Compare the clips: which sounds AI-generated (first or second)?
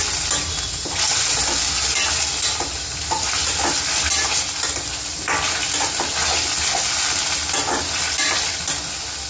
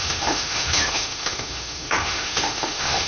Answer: second